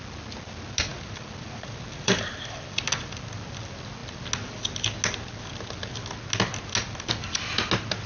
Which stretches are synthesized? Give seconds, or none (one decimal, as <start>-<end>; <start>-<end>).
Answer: 0.9-2.7